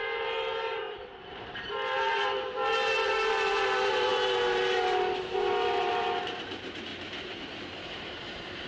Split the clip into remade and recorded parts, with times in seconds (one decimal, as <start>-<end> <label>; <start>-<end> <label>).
0.0-6.9 remade; 6.9-7.9 recorded; 7.9-8.7 remade